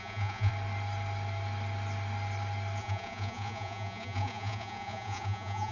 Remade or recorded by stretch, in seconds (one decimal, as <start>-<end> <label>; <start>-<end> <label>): 0.0-0.5 remade; 0.5-2.8 recorded; 2.8-5.7 remade